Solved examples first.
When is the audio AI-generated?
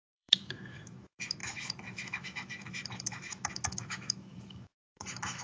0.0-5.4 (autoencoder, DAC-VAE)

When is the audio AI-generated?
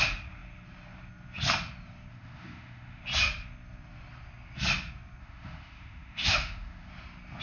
2.1-3.0 (autoencoder, DAC-VAE); 5.2-6.9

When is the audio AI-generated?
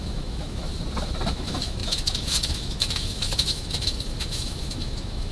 0.0-0.7 (autoencoder, DAC-VAE); 1.3-5.3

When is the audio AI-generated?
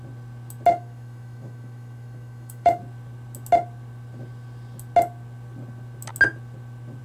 0.7-2.8 (autoencoder, DAC-VAE)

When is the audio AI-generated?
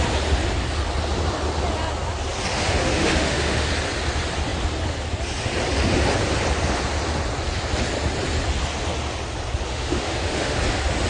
2.5-3.7 (autoencoder, DAC-VAE); 9.7-10.6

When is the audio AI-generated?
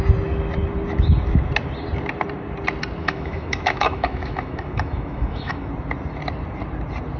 3.0-5.7 (autoencoder, DAC-VAE)